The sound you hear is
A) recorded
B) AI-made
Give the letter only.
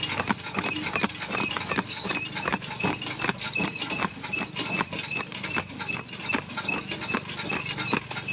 A